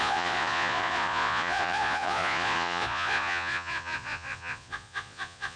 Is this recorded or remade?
remade